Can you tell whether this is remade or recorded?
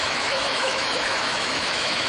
remade